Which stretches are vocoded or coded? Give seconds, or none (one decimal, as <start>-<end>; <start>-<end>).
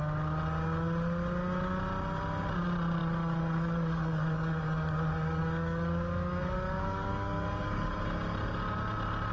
3.0-8.0